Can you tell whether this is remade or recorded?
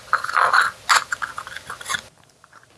recorded